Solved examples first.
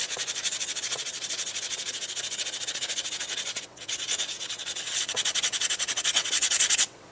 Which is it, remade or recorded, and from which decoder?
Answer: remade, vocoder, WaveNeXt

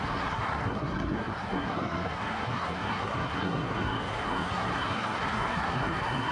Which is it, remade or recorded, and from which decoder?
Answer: remade, codec, SNAC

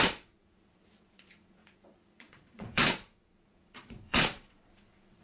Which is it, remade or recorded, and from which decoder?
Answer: remade, vocoder, Vocos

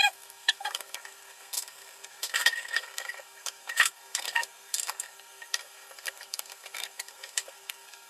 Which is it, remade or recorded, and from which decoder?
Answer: remade, codec, SNAC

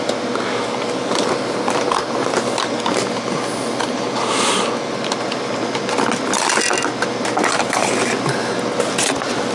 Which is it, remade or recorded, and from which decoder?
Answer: recorded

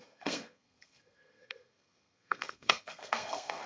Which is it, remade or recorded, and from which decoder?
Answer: remade, codec, SNAC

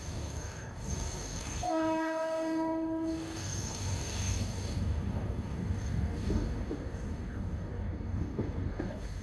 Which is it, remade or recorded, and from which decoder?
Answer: remade, codec, DAC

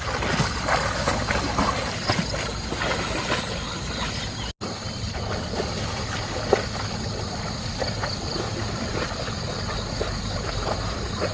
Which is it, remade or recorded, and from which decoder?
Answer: recorded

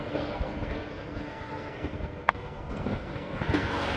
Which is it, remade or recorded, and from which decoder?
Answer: remade, codec, SNAC